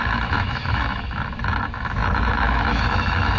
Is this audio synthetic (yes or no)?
yes